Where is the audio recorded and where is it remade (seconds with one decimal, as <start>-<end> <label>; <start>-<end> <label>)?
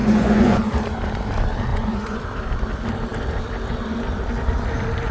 0.0-0.6 remade; 0.6-1.7 recorded; 1.7-2.2 remade; 2.2-5.1 recorded